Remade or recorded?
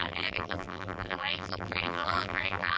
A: remade